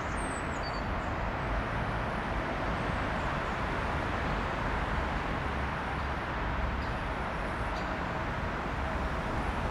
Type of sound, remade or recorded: recorded